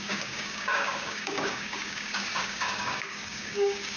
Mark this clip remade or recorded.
remade